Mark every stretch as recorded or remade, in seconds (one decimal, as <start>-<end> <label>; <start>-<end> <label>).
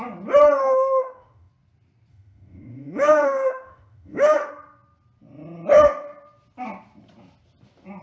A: 0.0-0.6 recorded; 0.6-1.5 remade; 1.5-2.1 recorded; 2.1-4.5 remade; 4.5-8.0 recorded